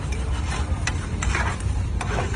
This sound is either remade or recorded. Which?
recorded